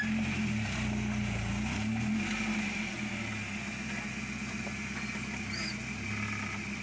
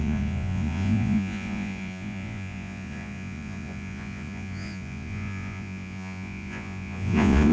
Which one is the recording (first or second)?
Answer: first